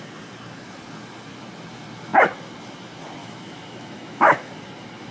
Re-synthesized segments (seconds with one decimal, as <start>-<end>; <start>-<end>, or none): 3.2-4.5